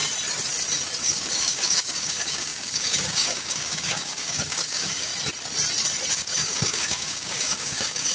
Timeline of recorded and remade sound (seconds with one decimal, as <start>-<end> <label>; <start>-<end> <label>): 0.0-1.0 recorded; 1.0-5.1 remade; 5.1-6.1 recorded; 6.1-8.1 remade